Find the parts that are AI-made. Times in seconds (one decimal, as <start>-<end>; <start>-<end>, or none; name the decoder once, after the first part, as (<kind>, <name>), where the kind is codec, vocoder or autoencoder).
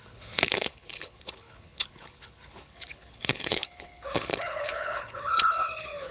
0.0-6.1 (codec, HILCodec)